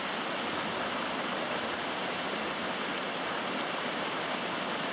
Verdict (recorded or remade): recorded